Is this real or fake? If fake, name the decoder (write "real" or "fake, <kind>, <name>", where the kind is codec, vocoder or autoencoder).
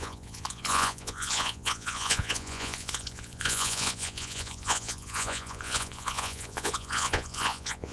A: fake, vocoder, Vocos